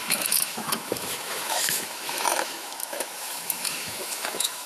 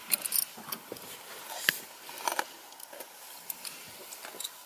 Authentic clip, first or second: second